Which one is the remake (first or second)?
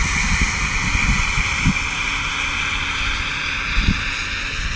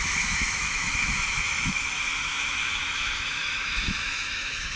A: second